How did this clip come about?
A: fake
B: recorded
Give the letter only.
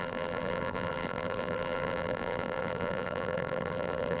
A